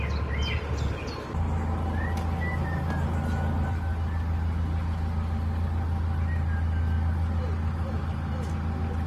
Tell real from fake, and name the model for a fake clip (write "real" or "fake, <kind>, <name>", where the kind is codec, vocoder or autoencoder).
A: real